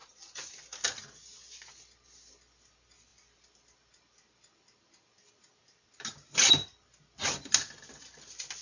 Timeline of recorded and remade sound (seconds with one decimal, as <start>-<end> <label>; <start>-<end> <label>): 0.0-0.6 remade; 0.6-8.6 recorded